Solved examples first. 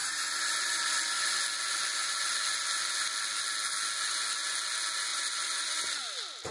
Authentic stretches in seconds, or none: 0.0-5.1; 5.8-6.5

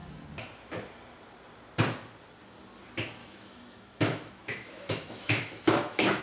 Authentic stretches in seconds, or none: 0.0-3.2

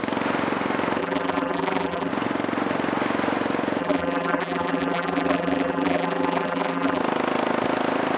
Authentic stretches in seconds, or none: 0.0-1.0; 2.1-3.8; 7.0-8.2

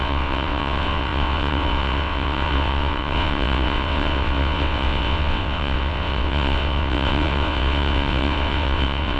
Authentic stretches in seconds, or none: none